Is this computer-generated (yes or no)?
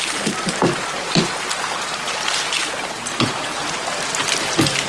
no